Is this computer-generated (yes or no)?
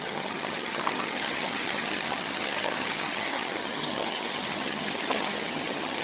yes